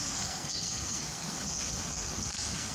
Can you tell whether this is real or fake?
fake